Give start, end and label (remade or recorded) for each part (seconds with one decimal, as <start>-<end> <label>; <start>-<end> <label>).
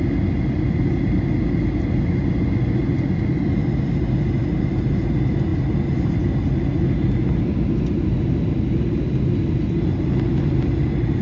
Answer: 0.0-11.2 recorded